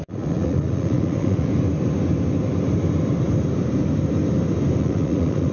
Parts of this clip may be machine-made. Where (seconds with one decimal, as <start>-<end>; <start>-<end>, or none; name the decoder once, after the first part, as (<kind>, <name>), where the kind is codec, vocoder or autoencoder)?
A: 0.0-1.5 (vocoder, Vocos); 4.8-5.5